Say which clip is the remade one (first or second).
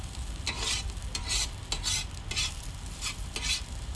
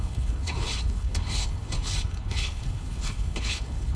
second